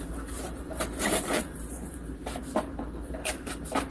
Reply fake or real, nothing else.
fake